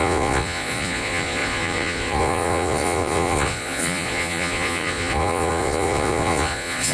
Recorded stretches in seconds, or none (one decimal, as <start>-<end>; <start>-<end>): none